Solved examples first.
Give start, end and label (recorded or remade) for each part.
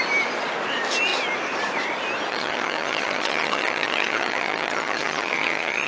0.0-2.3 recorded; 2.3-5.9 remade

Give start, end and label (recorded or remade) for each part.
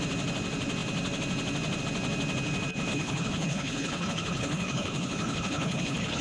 0.0-2.9 recorded; 2.9-6.2 remade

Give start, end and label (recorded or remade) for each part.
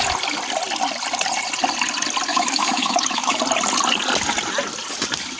0.0-2.3 recorded; 2.3-3.4 remade; 3.4-5.4 recorded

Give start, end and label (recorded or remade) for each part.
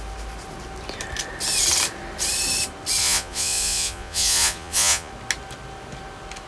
0.0-3.0 recorded; 3.0-5.1 remade; 5.1-6.5 recorded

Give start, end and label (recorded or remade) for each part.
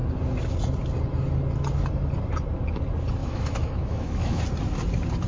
0.0-3.2 recorded; 3.2-4.4 remade; 4.4-5.3 recorded